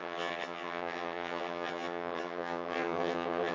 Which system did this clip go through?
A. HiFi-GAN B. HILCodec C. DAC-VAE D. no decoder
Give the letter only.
A